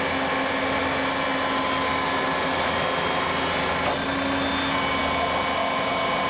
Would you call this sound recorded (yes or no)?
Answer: yes